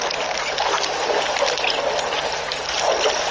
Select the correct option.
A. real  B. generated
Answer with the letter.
A